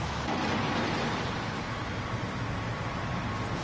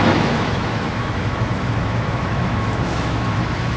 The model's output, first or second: second